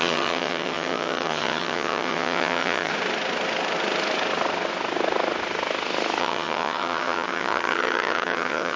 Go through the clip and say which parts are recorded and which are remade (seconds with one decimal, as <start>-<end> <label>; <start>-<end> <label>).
0.0-2.9 remade; 2.9-6.2 recorded; 6.2-8.8 remade